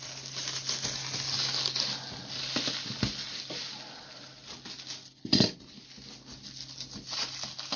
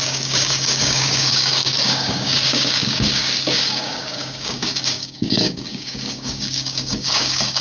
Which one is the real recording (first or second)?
first